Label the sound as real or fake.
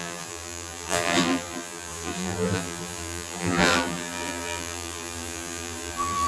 fake